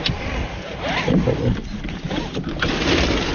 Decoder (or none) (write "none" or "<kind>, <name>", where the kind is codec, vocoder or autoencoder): none